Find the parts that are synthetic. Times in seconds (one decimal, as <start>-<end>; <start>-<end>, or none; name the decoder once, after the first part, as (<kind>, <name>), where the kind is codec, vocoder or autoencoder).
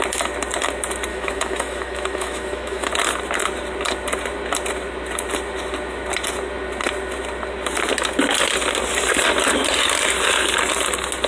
1.1-2.9 (autoencoder, DAC-VAE)